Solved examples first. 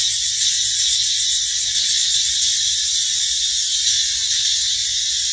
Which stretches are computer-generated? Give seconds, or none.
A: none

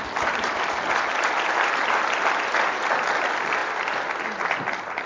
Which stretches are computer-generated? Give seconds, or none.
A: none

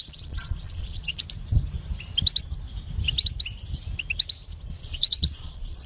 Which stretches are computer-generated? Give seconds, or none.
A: 0.0-1.2; 4.7-5.9

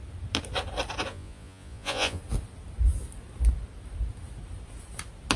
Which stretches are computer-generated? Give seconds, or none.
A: 1.1-2.2

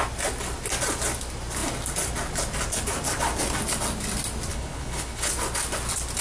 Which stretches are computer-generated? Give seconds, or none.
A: 4.5-5.3

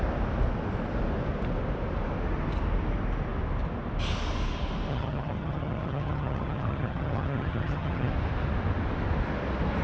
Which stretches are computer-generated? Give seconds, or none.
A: 4.9-8.1

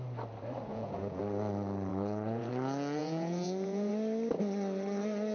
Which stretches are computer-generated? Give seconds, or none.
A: 0.7-1.2; 1.9-2.5; 3.0-3.9

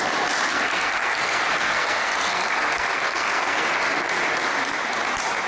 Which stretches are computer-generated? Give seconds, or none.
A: 0.5-3.8